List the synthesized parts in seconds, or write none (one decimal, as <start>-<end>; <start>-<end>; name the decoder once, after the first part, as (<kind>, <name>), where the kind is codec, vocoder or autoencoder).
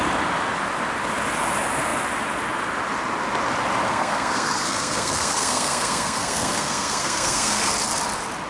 3.9-7.7 (codec, SNAC)